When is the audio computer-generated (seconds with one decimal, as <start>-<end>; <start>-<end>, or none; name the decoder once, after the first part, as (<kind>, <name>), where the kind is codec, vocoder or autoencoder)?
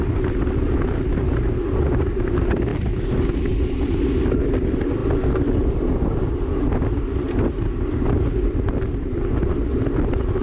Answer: none